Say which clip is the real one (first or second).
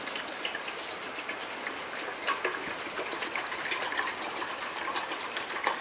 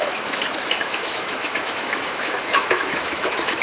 first